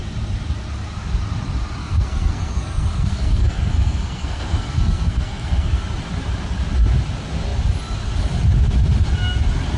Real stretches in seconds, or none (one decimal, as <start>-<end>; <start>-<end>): 0.0-1.8; 5.8-9.8